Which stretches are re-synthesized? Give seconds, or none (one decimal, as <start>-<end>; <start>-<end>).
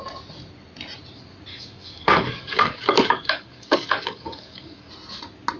1.5-4.9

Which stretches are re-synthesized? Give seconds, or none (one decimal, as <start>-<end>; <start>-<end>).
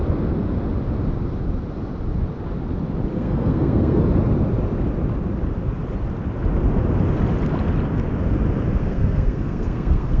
3.1-4.0; 8.8-10.2